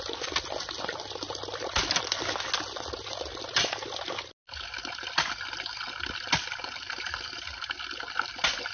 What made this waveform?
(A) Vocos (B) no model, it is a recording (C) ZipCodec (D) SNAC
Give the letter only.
B